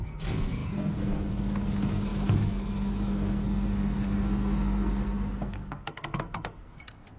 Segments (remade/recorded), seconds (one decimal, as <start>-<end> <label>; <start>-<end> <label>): 0.0-7.2 remade